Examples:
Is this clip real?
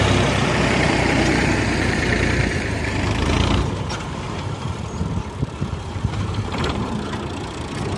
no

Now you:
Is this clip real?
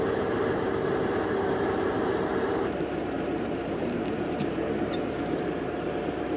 no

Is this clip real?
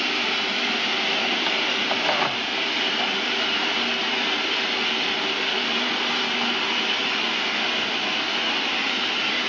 no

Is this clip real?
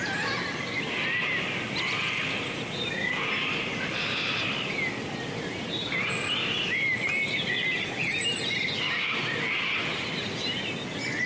yes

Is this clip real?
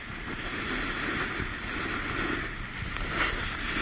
yes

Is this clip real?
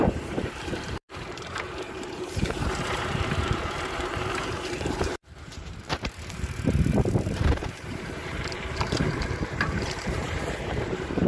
no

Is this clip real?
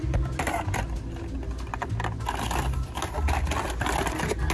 yes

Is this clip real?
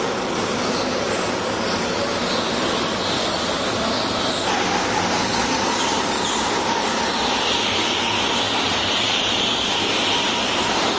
yes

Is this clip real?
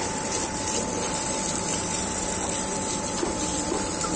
no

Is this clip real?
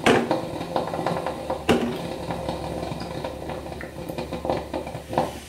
no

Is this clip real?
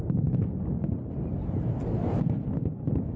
yes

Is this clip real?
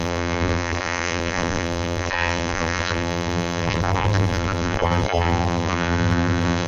no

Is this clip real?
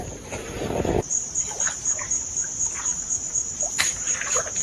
no